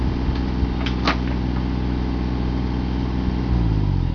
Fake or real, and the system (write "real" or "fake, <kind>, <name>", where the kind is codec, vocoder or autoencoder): real